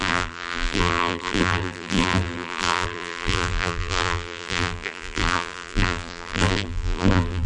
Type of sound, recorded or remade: remade